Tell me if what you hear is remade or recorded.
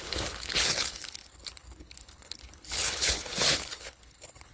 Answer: remade